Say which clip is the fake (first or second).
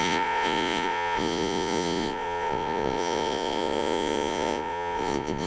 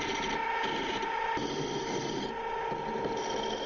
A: first